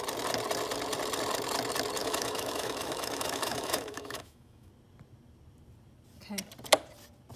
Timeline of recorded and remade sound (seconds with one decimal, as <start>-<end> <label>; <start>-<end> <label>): 0.0-2.0 recorded; 2.0-4.7 remade; 4.7-7.4 recorded